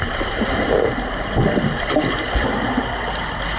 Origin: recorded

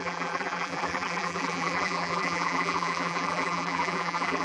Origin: remade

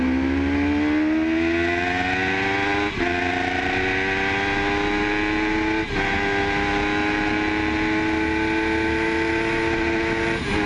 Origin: recorded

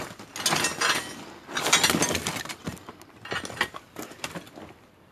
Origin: recorded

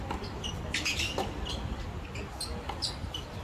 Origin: recorded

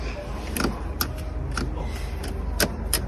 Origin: recorded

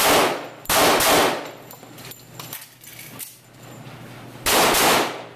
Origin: recorded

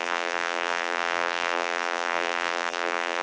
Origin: remade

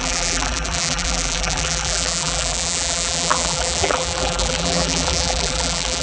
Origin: remade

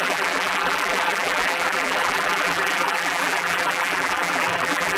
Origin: remade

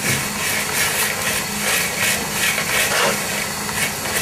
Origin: recorded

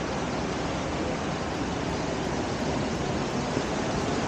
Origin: recorded